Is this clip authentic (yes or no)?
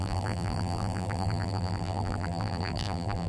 no